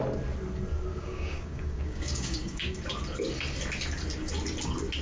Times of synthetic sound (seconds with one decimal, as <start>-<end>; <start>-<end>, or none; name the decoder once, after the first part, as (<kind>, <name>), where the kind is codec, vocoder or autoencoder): 0.9-2.8 (codec, DAC)